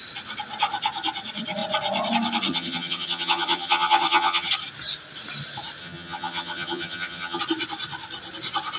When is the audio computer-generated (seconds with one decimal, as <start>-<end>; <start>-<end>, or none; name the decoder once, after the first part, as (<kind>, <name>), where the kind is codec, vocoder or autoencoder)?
2.5-4.5 (vocoder, HiFi-GAN); 5.8-7.4